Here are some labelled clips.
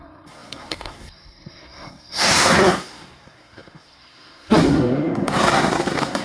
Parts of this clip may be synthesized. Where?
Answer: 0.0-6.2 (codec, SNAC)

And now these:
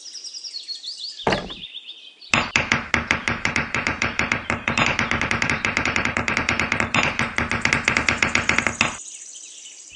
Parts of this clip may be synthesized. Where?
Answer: 3.2-7.6 (vocoder, BigVGAN v2)

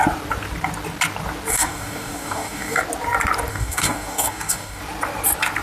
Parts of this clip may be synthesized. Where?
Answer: 1.5-2.8 (codec, DAC); 3.5-4.8

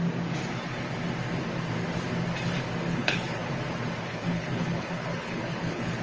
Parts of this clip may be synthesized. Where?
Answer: 2.9-3.5 (codec, HILCodec); 4.1-6.0